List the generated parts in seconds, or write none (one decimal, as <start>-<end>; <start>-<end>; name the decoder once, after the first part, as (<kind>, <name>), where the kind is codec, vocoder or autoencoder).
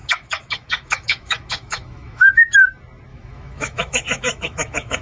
0.0-2.3 (autoencoder, DAC-VAE); 3.1-5.0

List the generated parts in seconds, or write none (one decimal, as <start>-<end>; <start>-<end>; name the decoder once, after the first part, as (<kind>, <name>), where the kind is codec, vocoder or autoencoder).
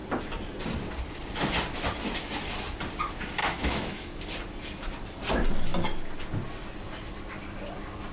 3.4-4.2 (autoencoder, DAC-VAE)